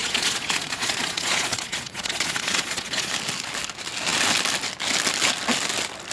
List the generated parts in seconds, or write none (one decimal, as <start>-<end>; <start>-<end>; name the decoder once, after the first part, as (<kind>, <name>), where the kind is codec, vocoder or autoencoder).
0.0-3.1 (vocoder, Vocos)